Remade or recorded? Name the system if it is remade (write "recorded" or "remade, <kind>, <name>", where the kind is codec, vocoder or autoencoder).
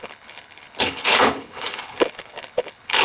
remade, codec, HILCodec